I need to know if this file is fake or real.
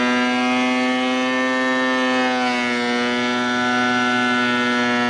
real